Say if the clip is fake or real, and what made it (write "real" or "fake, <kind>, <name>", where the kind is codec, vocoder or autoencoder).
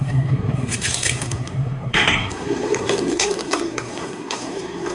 fake, codec, SNAC